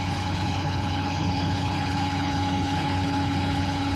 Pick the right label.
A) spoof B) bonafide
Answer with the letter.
A